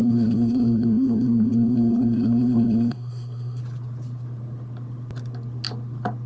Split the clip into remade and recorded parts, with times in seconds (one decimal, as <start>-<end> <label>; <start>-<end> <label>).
0.0-3.6 remade; 3.6-6.3 recorded